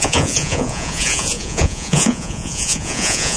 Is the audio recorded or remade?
remade